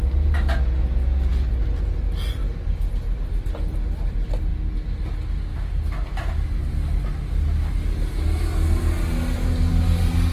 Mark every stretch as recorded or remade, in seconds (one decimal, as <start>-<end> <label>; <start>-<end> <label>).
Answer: 0.0-10.3 recorded